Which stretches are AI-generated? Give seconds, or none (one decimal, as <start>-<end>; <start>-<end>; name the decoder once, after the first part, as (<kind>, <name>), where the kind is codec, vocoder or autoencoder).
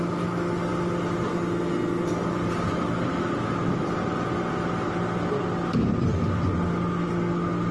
none